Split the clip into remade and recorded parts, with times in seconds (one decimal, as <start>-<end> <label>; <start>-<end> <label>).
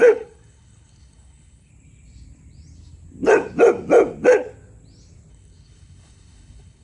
0.0-1.7 remade; 1.7-5.3 recorded; 5.3-6.8 remade